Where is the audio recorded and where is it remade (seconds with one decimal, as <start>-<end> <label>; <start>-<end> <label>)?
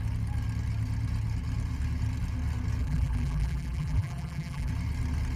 0.0-2.8 recorded; 2.8-4.7 remade; 4.7-5.4 recorded